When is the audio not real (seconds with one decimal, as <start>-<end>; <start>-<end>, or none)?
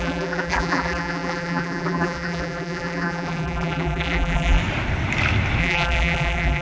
0.0-4.6; 5.6-6.6